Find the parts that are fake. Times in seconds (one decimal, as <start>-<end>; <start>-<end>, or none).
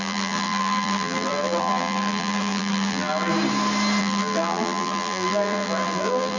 0.0-3.3; 4.0-6.4